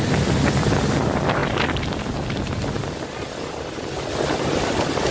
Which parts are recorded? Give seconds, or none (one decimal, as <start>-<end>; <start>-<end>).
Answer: 0.0-5.1